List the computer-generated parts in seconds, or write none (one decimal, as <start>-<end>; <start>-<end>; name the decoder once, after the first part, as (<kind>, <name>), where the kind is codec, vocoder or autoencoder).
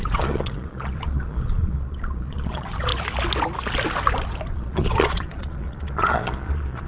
0.0-2.9 (vocoder, Vocos); 4.5-6.9